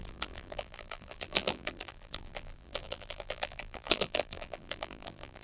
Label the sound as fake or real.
fake